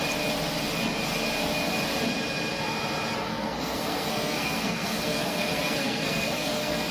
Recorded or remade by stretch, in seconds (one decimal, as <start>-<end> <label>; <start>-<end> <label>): 0.0-3.3 recorded; 3.3-6.9 remade